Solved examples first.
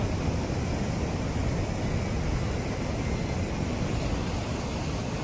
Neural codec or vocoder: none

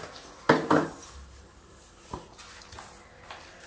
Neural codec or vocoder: none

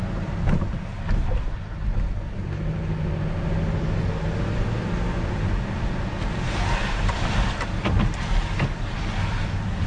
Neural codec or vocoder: none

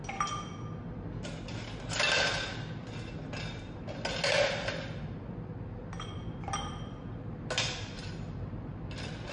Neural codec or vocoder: none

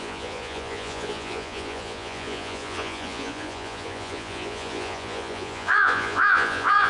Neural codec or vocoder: vocoder, Vocos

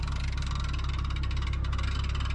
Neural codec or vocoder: none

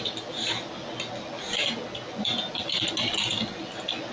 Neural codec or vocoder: none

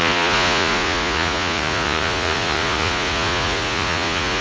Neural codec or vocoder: vocoder, Vocos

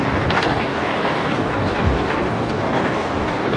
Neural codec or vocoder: codec, DAC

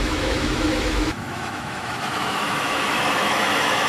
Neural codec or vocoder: autoencoder, DAC-VAE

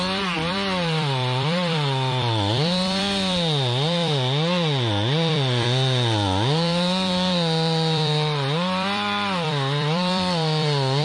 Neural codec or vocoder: vocoder, BigVGAN v2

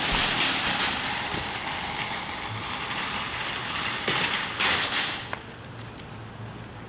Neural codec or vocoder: none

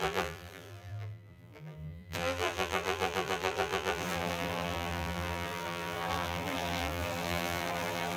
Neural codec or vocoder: vocoder, BigVGAN v2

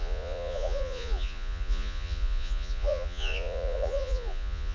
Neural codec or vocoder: vocoder, Vocos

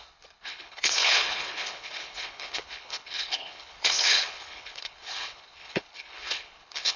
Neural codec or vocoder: codec, HILCodec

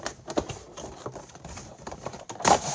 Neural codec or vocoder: none